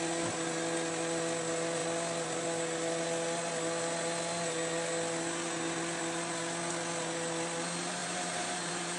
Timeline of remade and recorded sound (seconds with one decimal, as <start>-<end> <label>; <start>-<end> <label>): 0.0-8.0 recorded; 8.0-9.0 remade